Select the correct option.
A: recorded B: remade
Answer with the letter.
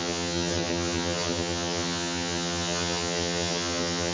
B